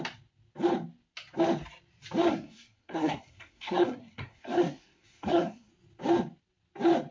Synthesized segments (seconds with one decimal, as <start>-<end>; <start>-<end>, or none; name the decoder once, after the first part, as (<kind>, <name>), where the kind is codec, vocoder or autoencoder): 2.3-5.7 (codec, SNAC)